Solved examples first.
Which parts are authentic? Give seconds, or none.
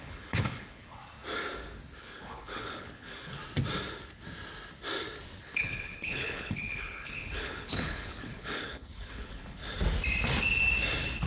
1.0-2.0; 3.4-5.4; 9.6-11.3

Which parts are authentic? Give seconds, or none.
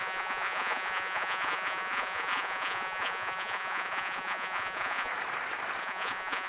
5.1-5.8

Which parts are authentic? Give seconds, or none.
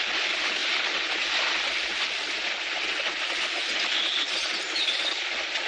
0.0-5.7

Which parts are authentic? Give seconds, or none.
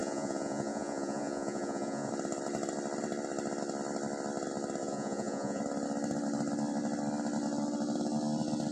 2.1-4.8; 5.6-8.7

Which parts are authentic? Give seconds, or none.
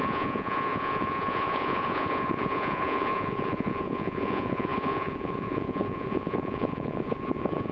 none